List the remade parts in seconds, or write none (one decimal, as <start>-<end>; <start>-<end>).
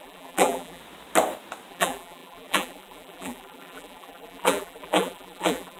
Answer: 0.0-0.8; 1.7-5.8